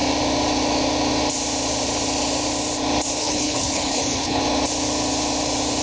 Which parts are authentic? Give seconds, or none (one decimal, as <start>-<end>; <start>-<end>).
0.0-3.2; 4.4-5.8